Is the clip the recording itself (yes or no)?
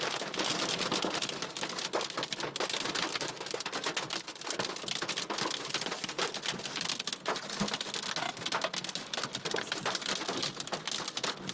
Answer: yes